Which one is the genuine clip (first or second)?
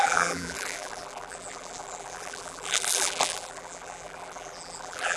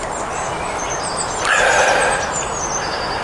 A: second